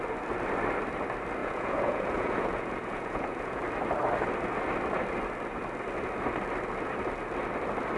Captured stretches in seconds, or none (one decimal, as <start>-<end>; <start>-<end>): 0.0-1.4; 3.6-8.0